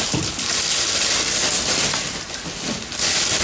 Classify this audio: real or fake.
real